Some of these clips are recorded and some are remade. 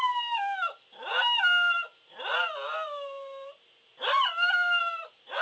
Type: recorded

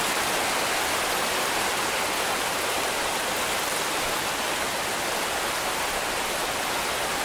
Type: recorded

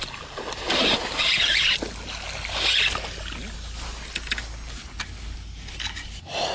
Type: recorded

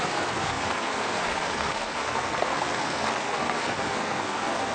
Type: remade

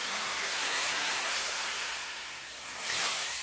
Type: remade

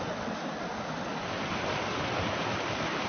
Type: recorded